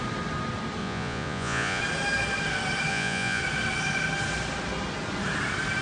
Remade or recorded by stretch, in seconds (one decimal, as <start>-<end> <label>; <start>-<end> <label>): 0.0-0.8 recorded; 0.8-1.8 remade; 1.8-2.9 recorded; 2.9-3.4 remade; 3.4-5.8 recorded